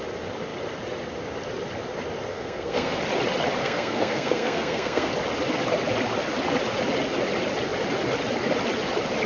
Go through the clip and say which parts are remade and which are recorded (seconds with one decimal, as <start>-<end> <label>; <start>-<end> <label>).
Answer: 0.0-2.3 recorded; 2.3-3.0 remade; 3.0-3.6 recorded; 3.6-5.1 remade; 5.1-9.3 recorded

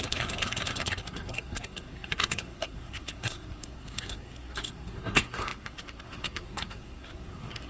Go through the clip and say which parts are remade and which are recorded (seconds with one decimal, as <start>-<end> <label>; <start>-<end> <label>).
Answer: 0.0-7.7 remade

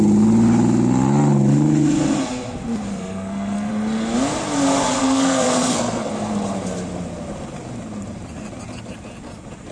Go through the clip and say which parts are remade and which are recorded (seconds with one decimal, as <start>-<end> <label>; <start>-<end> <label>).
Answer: 0.0-2.9 recorded; 2.9-3.7 remade; 3.7-5.0 recorded; 5.0-6.3 remade; 6.3-9.7 recorded

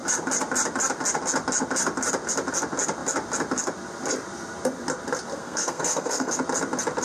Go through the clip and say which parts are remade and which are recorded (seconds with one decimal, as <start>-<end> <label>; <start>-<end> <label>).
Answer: 0.0-5.3 recorded; 5.3-6.3 remade; 6.3-7.0 recorded